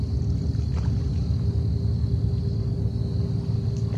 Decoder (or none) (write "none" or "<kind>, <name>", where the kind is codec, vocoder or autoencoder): none